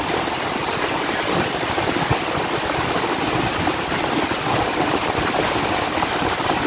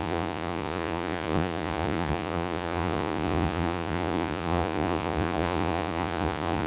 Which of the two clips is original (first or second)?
first